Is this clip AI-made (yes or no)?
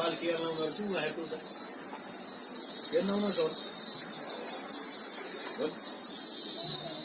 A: no